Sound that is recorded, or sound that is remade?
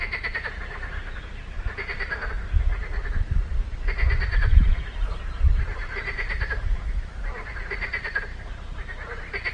recorded